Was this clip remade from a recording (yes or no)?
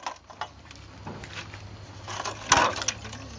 no